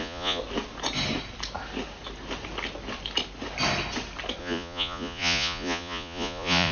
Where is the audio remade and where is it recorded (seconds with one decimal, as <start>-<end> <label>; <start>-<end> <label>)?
0.0-0.4 remade; 0.4-4.4 recorded; 4.4-6.7 remade

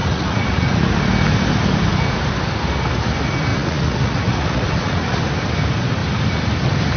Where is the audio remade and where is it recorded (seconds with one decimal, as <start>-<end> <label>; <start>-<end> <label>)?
0.0-0.9 remade; 0.9-3.5 recorded; 3.5-5.2 remade; 5.2-7.0 recorded

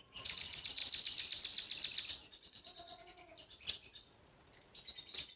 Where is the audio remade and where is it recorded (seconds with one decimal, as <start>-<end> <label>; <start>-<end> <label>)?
0.0-0.8 remade; 0.8-2.1 recorded; 2.1-5.4 remade

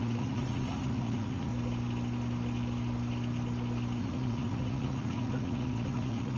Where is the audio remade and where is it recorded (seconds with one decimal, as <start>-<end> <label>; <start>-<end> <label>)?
0.0-1.5 remade; 1.5-4.0 recorded; 4.0-6.4 remade

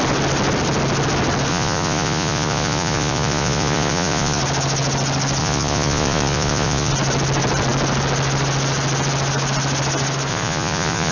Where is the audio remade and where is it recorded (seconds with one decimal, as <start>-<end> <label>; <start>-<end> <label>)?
0.0-1.5 recorded; 1.5-4.4 remade; 4.4-5.4 recorded; 5.4-6.9 remade; 6.9-10.3 recorded; 10.3-11.1 remade

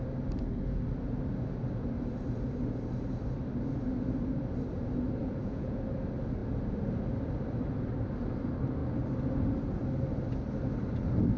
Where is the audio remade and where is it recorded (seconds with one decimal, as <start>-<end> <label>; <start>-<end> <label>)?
0.0-5.2 recorded; 5.2-5.8 remade; 5.8-11.4 recorded

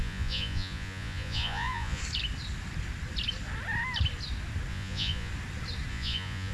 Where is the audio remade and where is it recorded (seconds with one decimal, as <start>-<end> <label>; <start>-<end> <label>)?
0.0-2.0 remade; 2.0-4.7 recorded; 4.7-5.3 remade; 5.3-5.9 recorded; 5.9-6.5 remade